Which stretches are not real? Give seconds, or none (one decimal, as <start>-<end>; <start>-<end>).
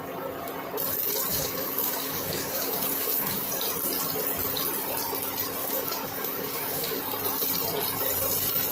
1.3-3.5; 5.6-7.0